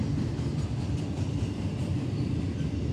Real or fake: real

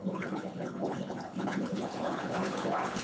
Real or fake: fake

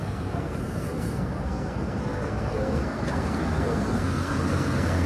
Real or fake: fake